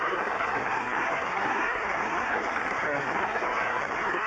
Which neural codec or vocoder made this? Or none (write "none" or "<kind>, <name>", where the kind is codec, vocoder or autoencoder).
codec, SNAC